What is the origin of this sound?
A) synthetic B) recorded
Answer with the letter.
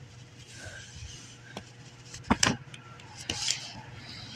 A